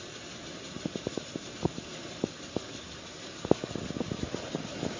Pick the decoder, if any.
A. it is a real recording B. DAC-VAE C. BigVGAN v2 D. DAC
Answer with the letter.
A